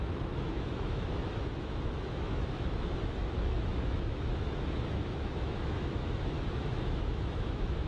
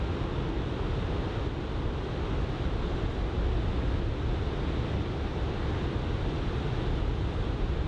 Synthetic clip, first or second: first